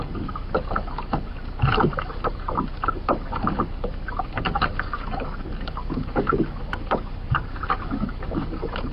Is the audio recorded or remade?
remade